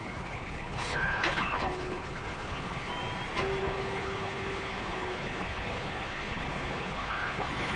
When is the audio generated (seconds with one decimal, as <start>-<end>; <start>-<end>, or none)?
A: 0.0-2.9; 3.6-7.8